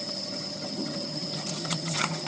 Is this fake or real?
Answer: fake